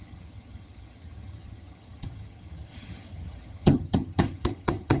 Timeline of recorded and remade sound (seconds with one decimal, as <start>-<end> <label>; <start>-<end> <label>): 0.0-5.0 remade